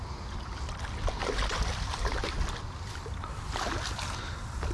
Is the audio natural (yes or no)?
yes